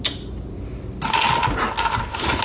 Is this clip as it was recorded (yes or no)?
yes